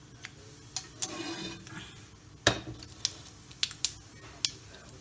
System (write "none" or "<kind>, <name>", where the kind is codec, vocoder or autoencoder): none